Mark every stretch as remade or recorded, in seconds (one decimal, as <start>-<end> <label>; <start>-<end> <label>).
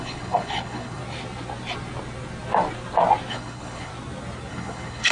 0.0-1.0 remade; 1.0-3.3 recorded; 3.3-3.9 remade; 3.9-4.5 recorded; 4.5-5.1 remade